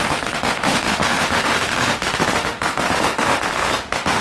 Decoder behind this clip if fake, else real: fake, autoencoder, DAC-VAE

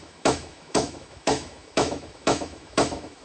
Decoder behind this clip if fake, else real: fake, autoencoder, DAC-VAE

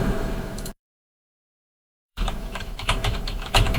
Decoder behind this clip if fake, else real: fake, autoencoder, DAC-VAE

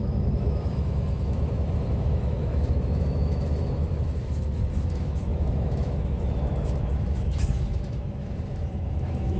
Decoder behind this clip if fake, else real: fake, autoencoder, DAC-VAE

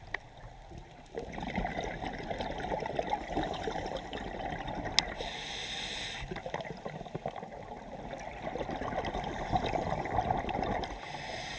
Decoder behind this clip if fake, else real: real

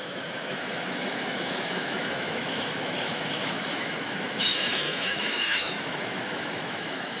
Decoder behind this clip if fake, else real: fake, autoencoder, DAC-VAE